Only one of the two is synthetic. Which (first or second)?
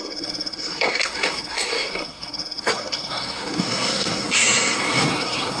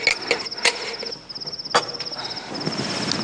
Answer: first